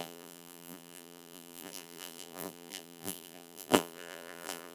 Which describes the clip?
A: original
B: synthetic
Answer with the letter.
B